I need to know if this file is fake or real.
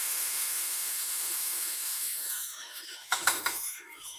fake